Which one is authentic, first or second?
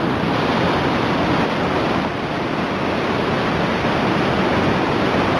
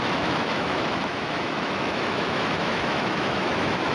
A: first